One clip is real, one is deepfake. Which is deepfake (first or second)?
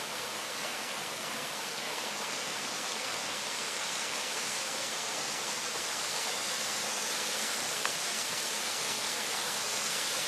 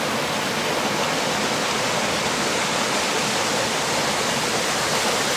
first